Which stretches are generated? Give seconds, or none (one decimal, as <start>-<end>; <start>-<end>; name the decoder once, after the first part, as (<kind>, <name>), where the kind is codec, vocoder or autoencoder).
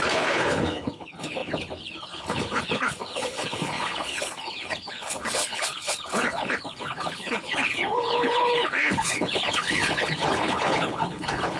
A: 0.0-11.6 (codec, HILCodec)